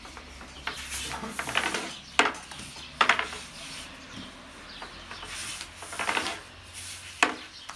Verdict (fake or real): real